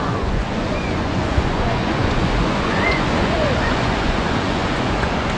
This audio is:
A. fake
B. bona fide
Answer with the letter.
A